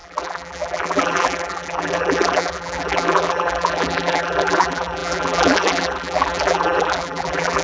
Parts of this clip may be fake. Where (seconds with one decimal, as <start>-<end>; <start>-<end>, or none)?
0.0-7.6